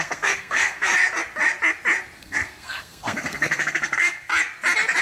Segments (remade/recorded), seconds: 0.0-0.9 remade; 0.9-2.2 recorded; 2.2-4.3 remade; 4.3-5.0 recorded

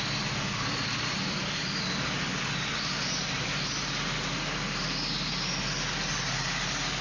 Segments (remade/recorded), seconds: 0.0-7.0 recorded

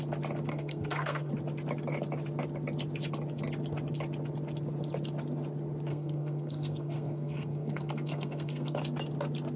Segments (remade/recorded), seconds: 0.0-0.5 recorded; 0.5-1.3 remade; 1.3-5.9 recorded; 5.9-8.8 remade; 8.8-9.6 recorded